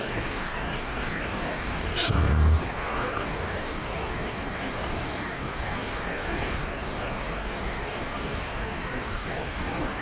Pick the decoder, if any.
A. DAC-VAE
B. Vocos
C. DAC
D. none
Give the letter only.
C